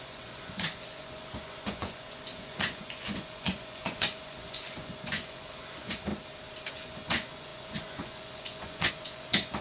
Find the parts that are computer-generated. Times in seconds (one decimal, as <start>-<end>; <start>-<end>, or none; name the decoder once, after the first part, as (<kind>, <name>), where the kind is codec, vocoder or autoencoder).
0.0-6.1 (vocoder, Vocos); 6.7-9.6